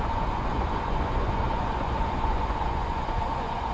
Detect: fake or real fake